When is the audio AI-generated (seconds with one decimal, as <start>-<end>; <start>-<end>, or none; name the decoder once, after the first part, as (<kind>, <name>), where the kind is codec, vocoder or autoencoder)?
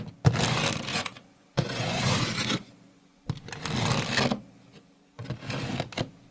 0.9-3.2 (vocoder, Vocos)